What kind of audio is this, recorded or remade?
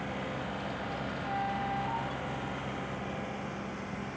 recorded